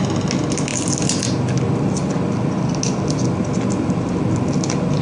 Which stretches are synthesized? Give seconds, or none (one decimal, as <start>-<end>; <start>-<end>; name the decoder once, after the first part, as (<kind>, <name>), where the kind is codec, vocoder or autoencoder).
none